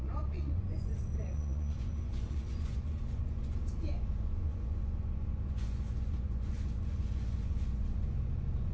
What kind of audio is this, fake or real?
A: fake